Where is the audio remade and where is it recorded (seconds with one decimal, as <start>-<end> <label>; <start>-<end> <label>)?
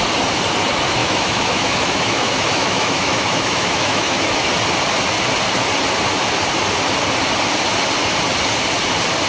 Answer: 0.0-1.0 recorded; 1.0-4.5 remade; 4.5-9.3 recorded